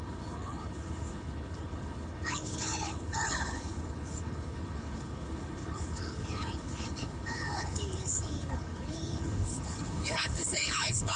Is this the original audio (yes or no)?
no